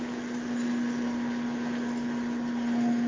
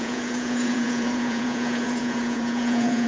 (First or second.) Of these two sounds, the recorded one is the first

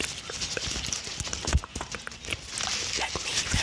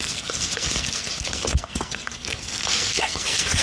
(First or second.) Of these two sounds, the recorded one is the first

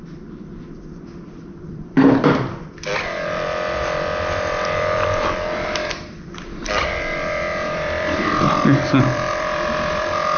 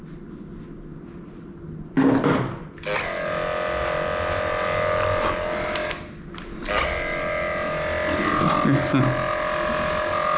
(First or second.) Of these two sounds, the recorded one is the second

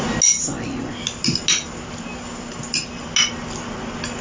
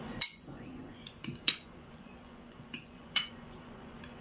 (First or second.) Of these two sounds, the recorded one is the first